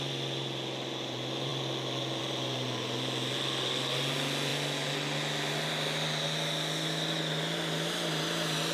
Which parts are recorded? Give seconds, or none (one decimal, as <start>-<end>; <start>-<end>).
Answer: 0.0-8.7